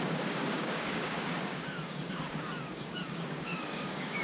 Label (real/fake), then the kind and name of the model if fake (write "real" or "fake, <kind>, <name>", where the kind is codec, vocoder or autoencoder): fake, codec, DAC